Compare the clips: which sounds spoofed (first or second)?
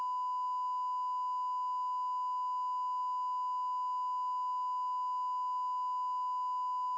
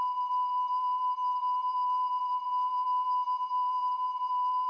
second